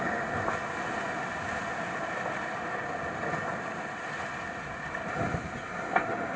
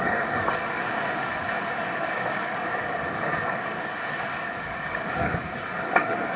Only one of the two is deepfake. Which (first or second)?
second